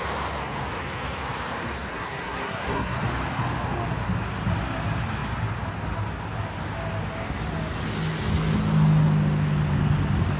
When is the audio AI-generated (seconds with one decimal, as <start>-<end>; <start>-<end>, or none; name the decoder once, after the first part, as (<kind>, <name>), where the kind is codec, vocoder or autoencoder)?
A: 1.9-3.0 (codec, SNAC)